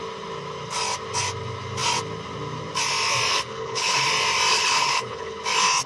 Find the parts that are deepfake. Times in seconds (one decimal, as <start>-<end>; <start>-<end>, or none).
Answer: 3.3-4.1; 4.5-5.4